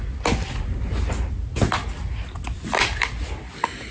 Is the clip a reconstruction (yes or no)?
no